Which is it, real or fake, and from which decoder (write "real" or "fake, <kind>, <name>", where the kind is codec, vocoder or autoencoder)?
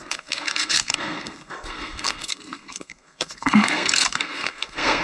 fake, codec, SNAC